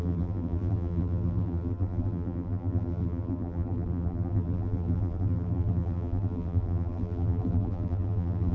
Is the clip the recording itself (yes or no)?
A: no